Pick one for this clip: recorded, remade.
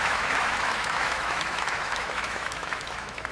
remade